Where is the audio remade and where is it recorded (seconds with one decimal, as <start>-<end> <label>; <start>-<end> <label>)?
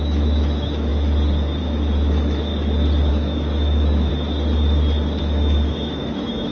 0.0-0.9 remade; 0.9-1.6 recorded; 1.6-2.5 remade; 2.5-3.1 recorded; 3.1-4.1 remade; 4.1-5.2 recorded; 5.2-6.5 remade